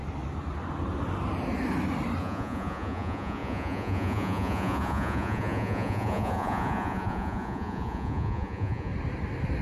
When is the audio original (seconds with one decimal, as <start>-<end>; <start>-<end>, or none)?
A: 0.0-2.2; 8.9-9.6